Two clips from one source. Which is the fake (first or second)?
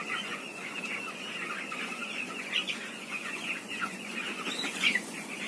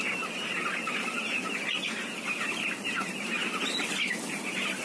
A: first